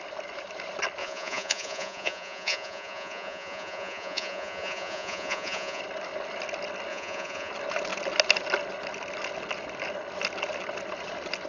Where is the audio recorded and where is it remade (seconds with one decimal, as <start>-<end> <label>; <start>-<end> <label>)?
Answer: 0.0-1.0 recorded; 1.0-5.8 remade; 5.8-6.9 recorded; 6.9-7.5 remade; 7.5-11.5 recorded